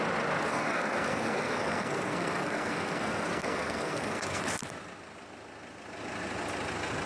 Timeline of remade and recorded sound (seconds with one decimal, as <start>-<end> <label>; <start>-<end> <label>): 0.0-0.5 recorded; 0.5-4.4 remade; 4.4-7.1 recorded